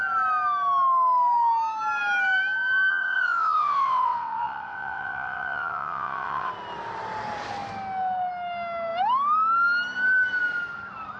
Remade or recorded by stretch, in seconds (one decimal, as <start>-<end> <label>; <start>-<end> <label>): 0.0-2.9 recorded; 2.9-6.5 remade; 6.5-11.2 recorded